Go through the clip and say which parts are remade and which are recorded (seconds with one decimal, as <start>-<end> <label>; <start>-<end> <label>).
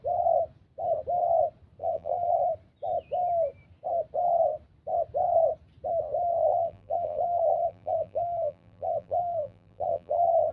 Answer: 0.0-1.8 recorded; 1.8-2.4 remade; 2.4-6.4 recorded; 6.4-10.5 remade